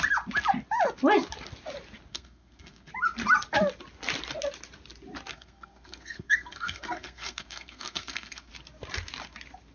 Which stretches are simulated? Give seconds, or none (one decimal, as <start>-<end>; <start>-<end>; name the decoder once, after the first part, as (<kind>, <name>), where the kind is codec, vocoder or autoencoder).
2.1-2.9 (codec, SNAC); 5.3-8.5